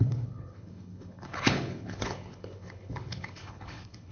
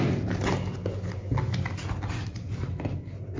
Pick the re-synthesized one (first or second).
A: first